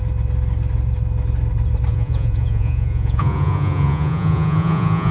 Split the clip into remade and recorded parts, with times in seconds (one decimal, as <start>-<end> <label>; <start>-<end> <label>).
0.0-1.9 recorded; 1.9-5.1 remade